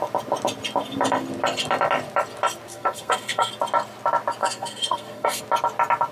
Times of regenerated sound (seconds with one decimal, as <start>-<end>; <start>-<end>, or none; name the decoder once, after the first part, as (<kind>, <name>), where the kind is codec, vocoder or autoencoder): 2.7-3.5 (codec, SNAC); 4.4-5.4